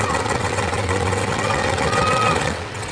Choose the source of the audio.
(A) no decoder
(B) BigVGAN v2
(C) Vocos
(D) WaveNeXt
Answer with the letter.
D